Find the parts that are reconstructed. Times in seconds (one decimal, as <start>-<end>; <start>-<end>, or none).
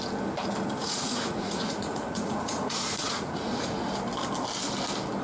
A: 0.8-3.9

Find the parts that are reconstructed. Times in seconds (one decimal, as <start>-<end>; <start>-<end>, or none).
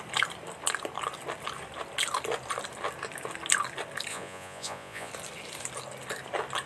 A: 4.1-5.1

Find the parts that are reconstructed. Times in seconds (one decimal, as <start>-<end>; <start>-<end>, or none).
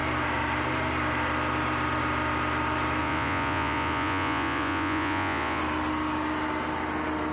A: 3.0-5.6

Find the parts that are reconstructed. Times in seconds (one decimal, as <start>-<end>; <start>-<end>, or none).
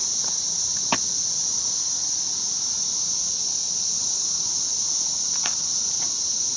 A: 0.0-0.9; 1.5-3.1; 4.0-6.6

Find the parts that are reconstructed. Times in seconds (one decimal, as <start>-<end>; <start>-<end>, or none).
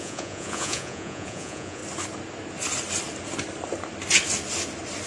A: 0.0-1.8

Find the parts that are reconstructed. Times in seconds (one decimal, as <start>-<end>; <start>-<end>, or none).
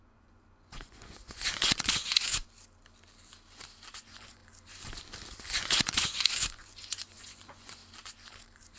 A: 0.0-2.4; 3.9-4.4; 5.4-7.8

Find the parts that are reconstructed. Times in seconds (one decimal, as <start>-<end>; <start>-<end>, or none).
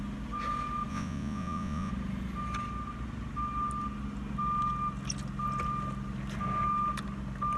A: 0.9-1.9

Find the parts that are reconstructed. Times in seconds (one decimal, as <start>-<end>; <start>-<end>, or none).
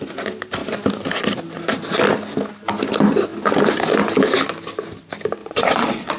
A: 5.4-6.2